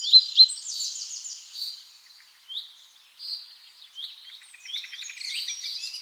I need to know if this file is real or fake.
fake